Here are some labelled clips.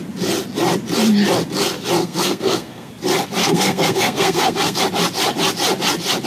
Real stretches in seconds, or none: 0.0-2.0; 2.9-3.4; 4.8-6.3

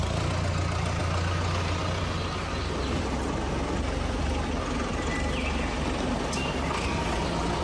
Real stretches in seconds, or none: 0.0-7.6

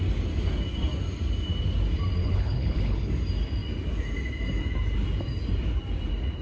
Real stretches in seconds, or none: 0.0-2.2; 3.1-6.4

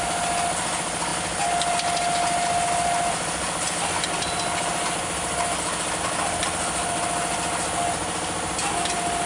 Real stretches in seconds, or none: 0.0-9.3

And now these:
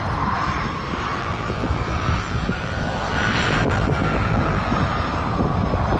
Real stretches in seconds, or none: 0.0-1.1; 4.7-6.0

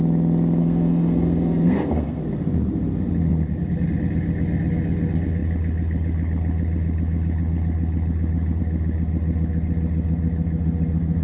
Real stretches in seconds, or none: 0.0-0.6; 2.2-11.2

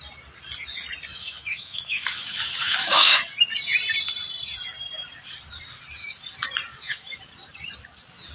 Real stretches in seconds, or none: 0.0-1.1; 3.2-6.7; 7.2-8.3

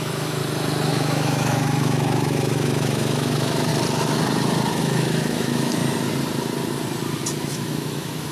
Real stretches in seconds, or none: 0.4-0.9; 3.7-4.8; 5.8-7.4